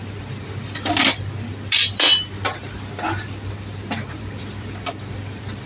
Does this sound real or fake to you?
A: fake